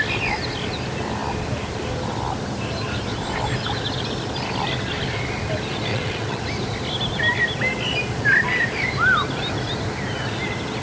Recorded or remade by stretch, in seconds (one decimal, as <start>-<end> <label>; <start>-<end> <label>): 0.0-5.9 recorded; 5.9-6.4 remade; 6.4-10.8 recorded